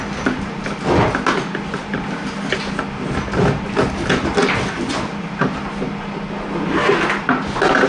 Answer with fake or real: real